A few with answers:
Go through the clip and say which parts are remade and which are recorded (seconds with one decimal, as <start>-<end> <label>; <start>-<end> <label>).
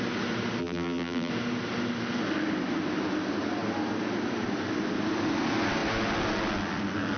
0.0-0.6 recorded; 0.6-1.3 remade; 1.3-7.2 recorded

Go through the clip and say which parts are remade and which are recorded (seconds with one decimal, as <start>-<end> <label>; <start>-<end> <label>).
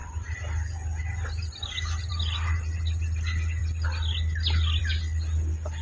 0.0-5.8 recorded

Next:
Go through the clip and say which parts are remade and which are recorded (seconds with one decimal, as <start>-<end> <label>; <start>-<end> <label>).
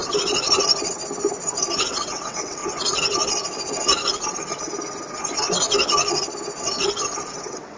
0.0-1.8 recorded; 1.8-2.6 remade; 2.6-7.3 recorded; 7.3-7.8 remade